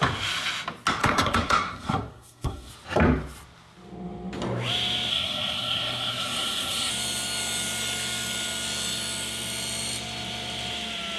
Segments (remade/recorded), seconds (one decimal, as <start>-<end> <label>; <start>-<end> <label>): 0.0-1.0 recorded; 1.0-2.7 remade; 2.7-5.1 recorded; 5.1-6.9 remade; 6.9-11.2 recorded